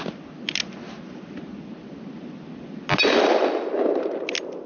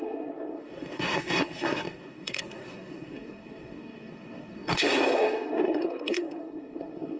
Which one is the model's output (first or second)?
second